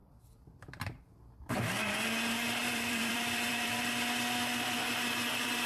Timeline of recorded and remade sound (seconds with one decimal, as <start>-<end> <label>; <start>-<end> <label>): 0.0-1.6 remade; 1.6-2.6 recorded; 2.6-3.9 remade; 3.9-5.7 recorded